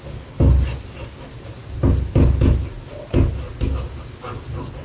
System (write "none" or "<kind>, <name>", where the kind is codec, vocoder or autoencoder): none